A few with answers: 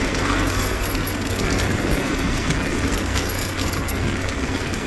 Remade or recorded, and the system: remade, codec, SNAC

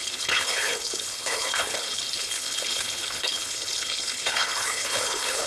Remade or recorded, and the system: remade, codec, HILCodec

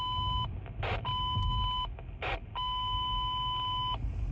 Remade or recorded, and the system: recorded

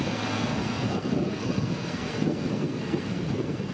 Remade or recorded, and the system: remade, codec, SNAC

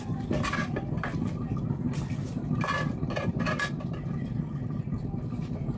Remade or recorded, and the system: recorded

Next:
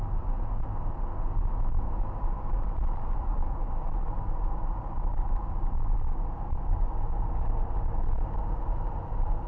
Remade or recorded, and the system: recorded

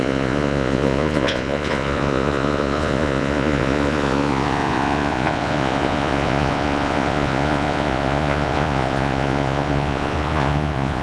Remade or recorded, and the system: remade, vocoder, Vocos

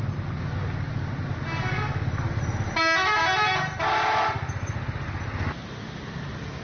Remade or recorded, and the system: recorded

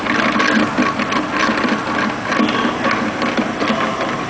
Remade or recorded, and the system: recorded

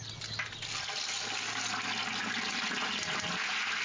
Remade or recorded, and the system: recorded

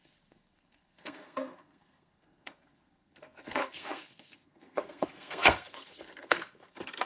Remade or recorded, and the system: remade, codec, SNAC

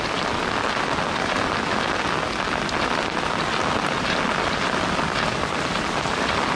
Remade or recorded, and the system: recorded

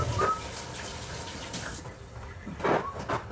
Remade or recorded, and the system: recorded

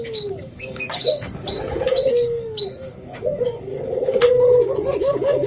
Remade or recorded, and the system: remade, codec, DAC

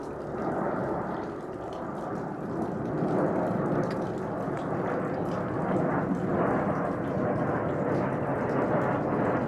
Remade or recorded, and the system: recorded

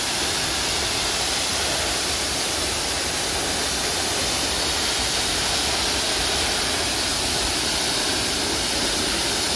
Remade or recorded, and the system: recorded